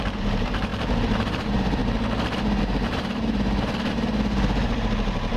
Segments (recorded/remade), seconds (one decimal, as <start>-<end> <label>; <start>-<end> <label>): 0.0-1.8 remade; 1.8-2.6 recorded; 2.6-5.4 remade